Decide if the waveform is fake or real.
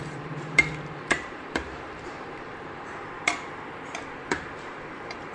fake